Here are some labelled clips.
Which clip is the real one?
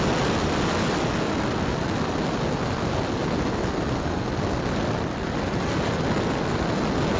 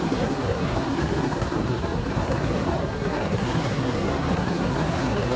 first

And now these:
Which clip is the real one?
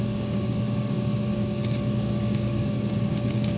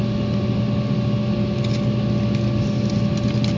second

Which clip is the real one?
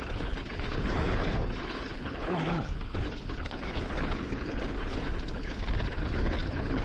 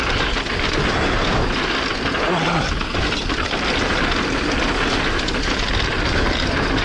second